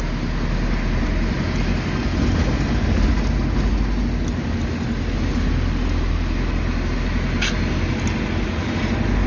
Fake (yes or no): no